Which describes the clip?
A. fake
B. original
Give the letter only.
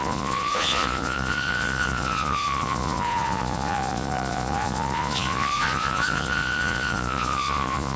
A